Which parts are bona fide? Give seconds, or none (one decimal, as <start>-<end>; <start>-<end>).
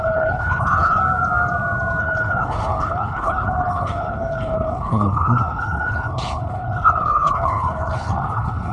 1.0-2.0